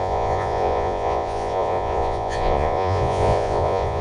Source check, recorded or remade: remade